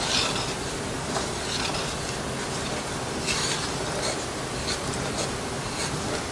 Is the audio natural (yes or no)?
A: yes